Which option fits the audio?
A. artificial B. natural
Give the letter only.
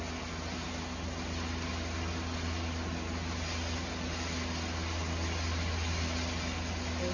B